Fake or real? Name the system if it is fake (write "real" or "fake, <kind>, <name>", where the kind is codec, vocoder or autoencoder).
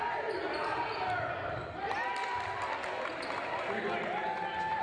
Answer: real